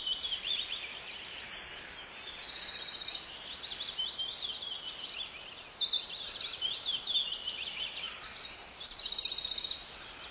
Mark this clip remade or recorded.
recorded